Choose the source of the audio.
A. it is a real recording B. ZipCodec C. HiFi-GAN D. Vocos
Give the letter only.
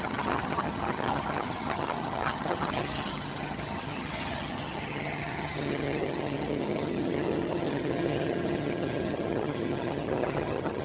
C